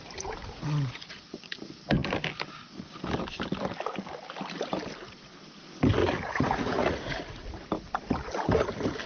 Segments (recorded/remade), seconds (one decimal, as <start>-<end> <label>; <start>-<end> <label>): 0.0-0.4 recorded; 0.4-1.6 remade; 1.6-6.0 recorded; 6.0-7.4 remade; 7.4-9.1 recorded